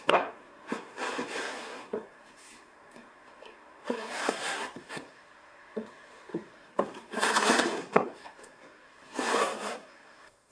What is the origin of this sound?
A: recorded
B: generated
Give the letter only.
B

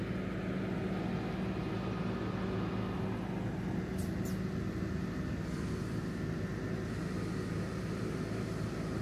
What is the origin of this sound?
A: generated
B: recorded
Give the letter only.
B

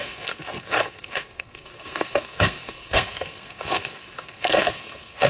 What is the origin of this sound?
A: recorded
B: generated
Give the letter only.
B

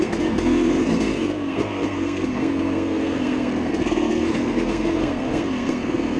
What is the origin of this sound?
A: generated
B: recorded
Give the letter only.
A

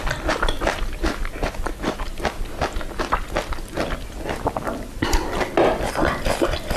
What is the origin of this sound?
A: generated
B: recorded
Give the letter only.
B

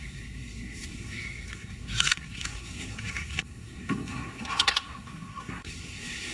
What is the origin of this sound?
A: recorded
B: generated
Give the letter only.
B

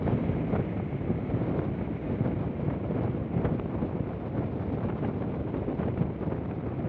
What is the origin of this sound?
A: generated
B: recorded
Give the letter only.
B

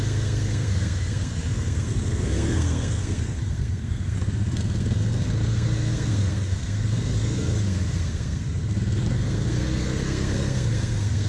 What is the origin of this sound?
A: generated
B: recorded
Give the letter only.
A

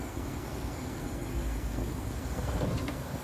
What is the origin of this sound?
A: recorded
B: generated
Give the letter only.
B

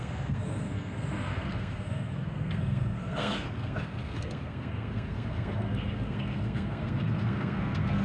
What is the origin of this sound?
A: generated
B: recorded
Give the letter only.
A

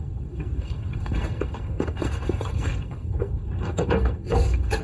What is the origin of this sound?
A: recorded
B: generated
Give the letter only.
B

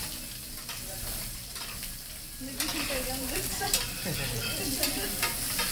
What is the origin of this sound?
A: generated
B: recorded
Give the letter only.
B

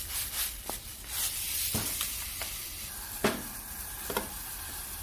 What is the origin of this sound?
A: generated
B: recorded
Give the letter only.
B